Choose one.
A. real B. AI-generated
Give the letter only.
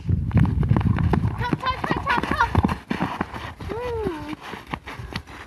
A